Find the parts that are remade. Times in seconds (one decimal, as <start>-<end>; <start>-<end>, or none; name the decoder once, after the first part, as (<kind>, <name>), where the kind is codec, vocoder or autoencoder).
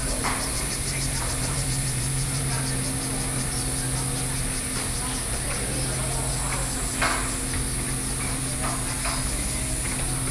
0.0-2.6 (vocoder, BigVGAN v2)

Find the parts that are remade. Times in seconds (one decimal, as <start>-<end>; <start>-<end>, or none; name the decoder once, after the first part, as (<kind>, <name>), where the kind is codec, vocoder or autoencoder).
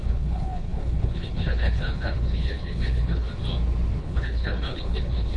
0.0-3.3 (codec, HILCodec); 4.0-5.4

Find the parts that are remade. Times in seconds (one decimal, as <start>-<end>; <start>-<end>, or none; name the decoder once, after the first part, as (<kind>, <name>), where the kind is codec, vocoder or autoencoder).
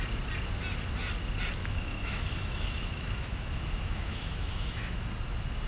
1.6-5.0 (autoencoder, DAC-VAE)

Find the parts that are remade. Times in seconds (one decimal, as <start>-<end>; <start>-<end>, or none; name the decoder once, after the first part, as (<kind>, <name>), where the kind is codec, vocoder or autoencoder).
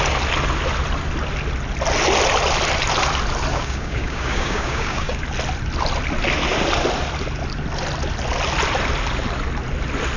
3.5-5.2 (codec, DAC)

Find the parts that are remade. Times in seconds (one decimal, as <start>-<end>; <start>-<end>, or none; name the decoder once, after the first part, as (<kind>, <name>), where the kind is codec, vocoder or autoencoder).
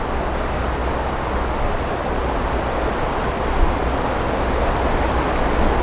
none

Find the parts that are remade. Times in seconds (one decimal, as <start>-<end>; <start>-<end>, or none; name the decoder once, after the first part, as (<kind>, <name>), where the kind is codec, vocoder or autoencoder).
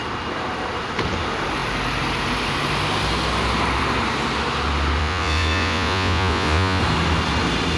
5.0-6.8 (vocoder, Vocos)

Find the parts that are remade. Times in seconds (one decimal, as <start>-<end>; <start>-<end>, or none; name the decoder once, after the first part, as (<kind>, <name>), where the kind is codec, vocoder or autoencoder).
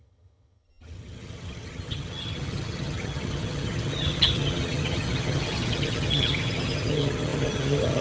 0.0-8.0 (vocoder, HiFi-GAN)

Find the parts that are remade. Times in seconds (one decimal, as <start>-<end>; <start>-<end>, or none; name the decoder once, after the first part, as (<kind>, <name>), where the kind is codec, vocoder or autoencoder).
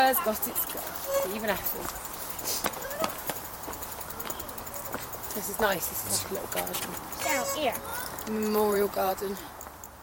7.9-9.1 (vocoder, BigVGAN v2)